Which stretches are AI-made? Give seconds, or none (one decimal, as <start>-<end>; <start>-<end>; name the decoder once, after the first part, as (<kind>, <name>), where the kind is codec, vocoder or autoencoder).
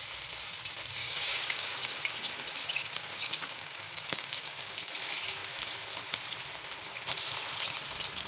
1.0-1.9 (codec, DAC); 2.6-4.9